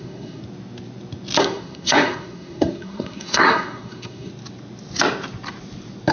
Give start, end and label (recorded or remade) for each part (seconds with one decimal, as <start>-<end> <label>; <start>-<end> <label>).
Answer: 0.0-0.4 remade; 0.4-1.4 recorded; 1.4-4.3 remade; 4.3-6.1 recorded